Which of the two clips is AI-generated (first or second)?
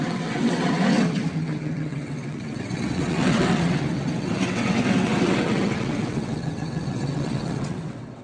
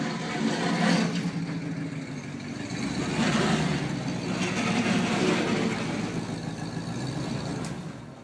first